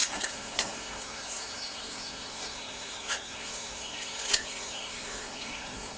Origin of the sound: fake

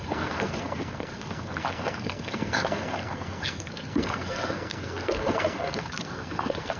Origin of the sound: fake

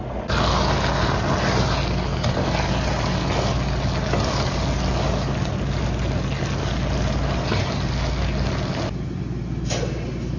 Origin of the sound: real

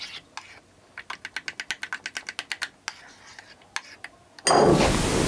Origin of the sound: real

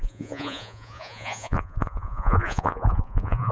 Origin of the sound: fake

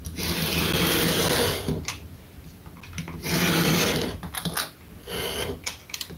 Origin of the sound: real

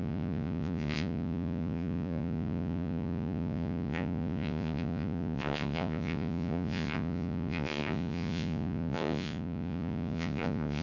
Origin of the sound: fake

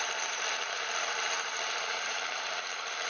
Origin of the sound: fake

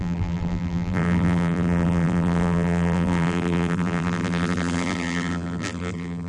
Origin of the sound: fake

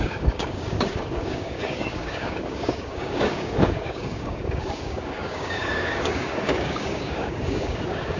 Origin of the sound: fake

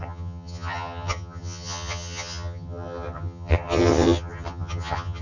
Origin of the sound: fake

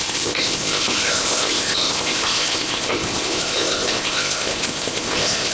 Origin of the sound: fake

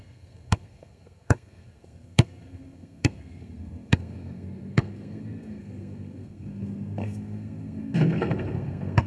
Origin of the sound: fake